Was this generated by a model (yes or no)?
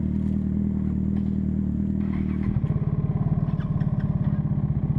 no